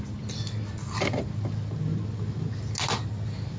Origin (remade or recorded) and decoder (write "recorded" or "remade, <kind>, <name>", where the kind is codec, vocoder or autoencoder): recorded